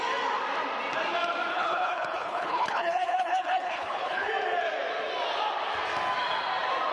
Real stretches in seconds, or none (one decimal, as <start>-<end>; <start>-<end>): 0.0-1.5; 4.3-6.9